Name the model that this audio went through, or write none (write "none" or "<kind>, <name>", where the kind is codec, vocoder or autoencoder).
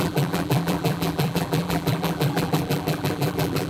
vocoder, BigVGAN v2